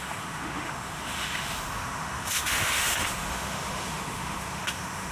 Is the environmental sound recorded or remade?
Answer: remade